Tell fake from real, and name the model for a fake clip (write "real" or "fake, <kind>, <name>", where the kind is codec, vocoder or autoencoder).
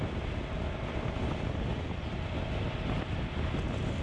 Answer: fake, vocoder, BigVGAN v2